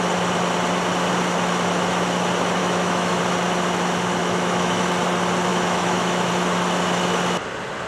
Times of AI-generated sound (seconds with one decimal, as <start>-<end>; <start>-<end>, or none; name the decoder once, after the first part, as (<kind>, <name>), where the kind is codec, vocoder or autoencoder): 2.6-3.2 (autoencoder, DAC-VAE); 4.2-4.8; 5.5-6.3